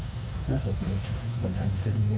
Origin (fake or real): fake